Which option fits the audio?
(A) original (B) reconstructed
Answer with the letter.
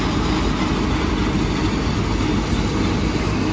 A